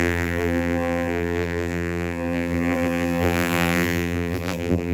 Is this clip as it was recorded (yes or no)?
no